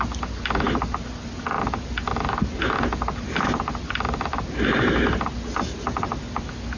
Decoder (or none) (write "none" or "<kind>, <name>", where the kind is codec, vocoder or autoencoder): none